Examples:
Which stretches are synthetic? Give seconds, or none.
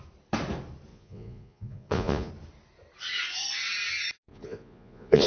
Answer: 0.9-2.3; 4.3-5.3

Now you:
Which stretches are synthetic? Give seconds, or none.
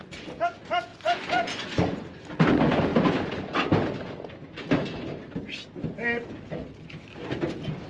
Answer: 0.9-2.2